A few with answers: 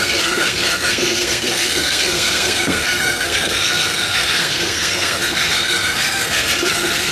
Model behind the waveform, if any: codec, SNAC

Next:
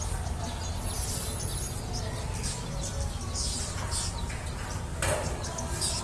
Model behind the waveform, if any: none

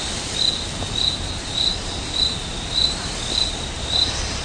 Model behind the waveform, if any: none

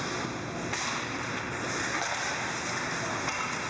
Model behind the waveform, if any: none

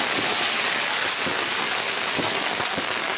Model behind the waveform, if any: none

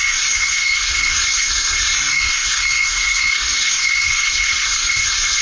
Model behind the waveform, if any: codec, SNAC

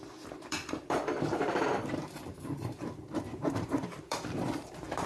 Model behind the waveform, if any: vocoder, BigVGAN v2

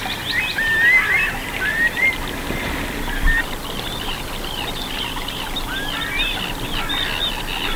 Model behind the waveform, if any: none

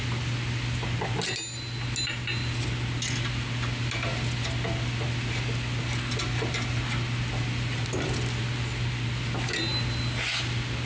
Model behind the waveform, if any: none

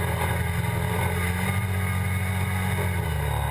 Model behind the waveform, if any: none